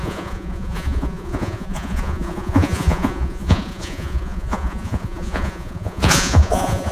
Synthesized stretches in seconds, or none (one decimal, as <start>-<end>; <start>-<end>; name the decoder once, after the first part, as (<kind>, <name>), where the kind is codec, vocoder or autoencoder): 0.0-6.9 (vocoder, Vocos)